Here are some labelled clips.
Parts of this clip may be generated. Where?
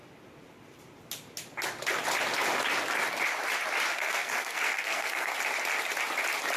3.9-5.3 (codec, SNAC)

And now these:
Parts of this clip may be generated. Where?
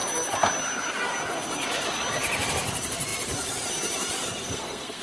4.4-5.0 (codec, SNAC)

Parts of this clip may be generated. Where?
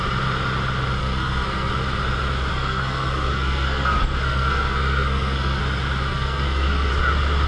1.0-1.7 (codec, SNAC); 2.5-5.6; 6.1-6.9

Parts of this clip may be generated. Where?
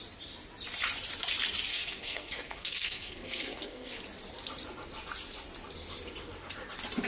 1.7-3.9 (codec, SNAC)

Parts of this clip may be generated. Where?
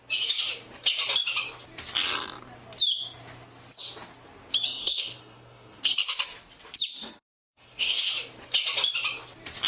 4.8-5.8 (codec, SNAC); 7.5-8.1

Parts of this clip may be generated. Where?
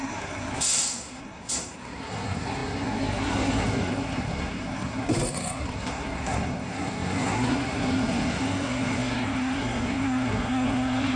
0.0-11.2 (codec, SNAC)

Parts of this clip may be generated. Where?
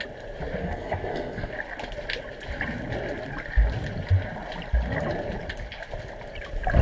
0.6-1.5 (codec, SNAC)